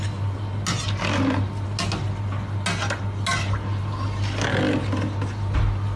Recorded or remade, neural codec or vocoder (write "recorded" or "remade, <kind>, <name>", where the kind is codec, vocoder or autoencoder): recorded